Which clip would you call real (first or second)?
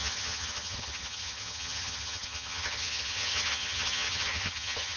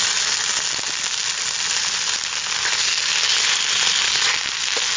second